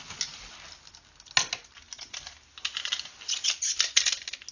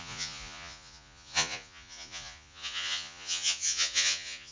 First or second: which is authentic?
first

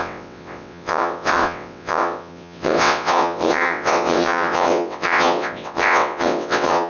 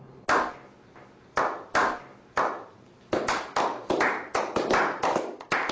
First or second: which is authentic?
second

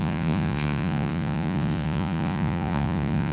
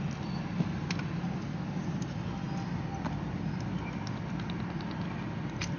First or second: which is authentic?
second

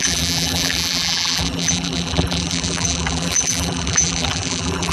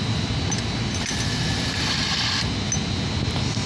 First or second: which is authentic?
second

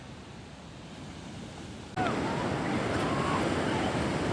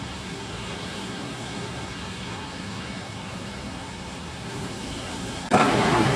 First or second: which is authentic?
first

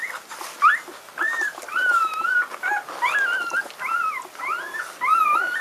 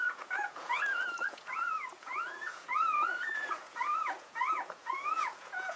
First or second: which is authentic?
first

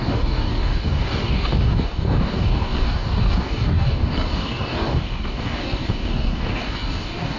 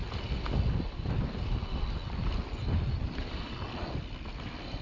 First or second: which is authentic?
second